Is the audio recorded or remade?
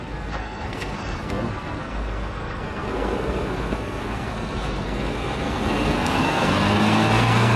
remade